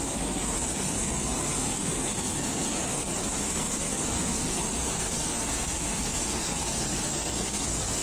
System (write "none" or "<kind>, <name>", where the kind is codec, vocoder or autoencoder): codec, SNAC